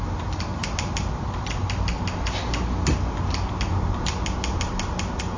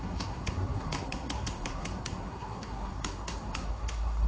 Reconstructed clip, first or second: second